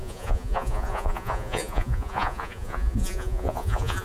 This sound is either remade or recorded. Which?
remade